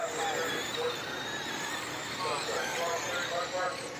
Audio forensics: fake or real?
real